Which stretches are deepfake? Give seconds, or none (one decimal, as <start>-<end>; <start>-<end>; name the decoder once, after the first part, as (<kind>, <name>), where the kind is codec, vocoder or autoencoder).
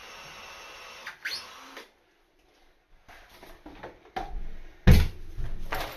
none